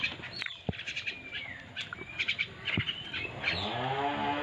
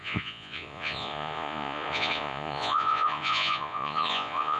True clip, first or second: first